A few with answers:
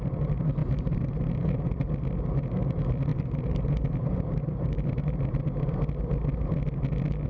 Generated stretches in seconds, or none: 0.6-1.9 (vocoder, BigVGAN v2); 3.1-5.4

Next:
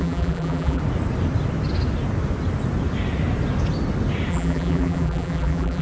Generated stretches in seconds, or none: 0.0-0.8 (vocoder, BigVGAN v2); 4.3-5.8